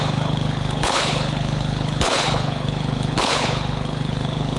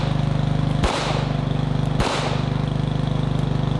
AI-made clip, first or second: first